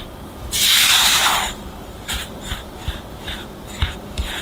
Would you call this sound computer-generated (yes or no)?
yes